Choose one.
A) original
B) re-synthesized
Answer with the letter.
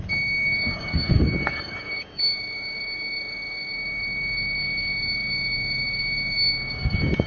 B